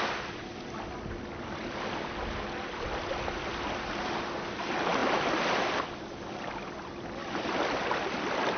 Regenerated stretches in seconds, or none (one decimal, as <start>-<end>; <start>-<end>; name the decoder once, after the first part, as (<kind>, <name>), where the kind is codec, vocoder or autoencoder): none